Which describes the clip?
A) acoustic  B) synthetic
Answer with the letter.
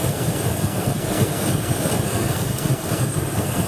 B